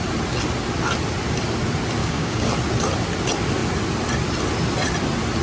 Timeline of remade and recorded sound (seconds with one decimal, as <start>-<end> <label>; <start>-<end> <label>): 0.0-2.0 recorded; 2.0-2.5 remade; 2.5-5.4 recorded